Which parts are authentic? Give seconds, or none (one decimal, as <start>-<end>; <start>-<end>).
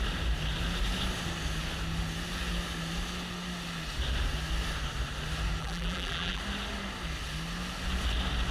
0.0-5.6; 6.4-8.5